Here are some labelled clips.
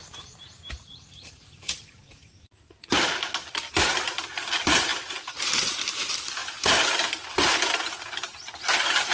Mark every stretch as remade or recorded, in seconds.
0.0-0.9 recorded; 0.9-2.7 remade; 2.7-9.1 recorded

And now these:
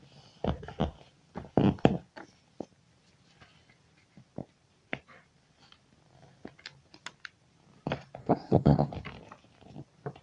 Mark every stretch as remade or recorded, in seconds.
0.0-8.2 recorded; 8.2-8.9 remade; 8.9-10.2 recorded

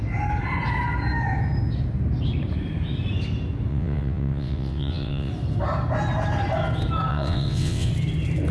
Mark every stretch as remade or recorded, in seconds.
0.0-3.7 recorded; 3.7-5.3 remade; 5.3-7.1 recorded; 7.1-7.9 remade; 7.9-8.5 recorded